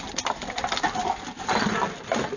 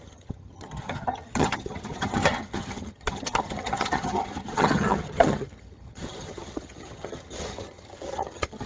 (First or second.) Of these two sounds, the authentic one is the first